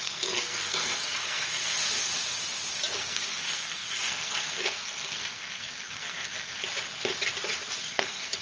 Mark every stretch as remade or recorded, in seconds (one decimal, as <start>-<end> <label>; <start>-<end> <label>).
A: 0.0-1.8 remade; 1.8-2.9 recorded; 2.9-6.6 remade; 6.6-7.8 recorded; 7.8-8.4 remade